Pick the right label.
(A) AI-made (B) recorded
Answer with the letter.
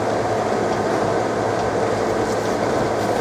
B